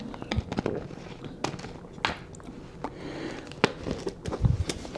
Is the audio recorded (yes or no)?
yes